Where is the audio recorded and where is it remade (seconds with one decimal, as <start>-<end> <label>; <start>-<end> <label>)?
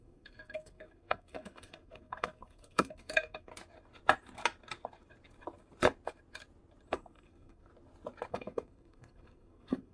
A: 0.0-3.5 remade; 3.5-6.9 recorded; 6.9-7.7 remade; 7.7-8.3 recorded; 8.3-9.9 remade